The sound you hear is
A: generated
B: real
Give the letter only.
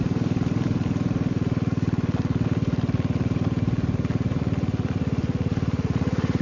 B